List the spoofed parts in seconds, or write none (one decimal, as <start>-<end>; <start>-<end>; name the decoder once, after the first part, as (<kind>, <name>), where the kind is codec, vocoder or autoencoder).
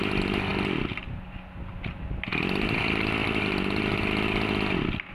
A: none